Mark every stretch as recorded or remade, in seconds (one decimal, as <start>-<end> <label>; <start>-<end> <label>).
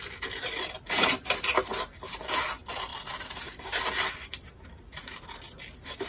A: 0.0-6.1 recorded